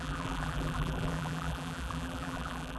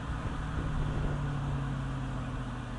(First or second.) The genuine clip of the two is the second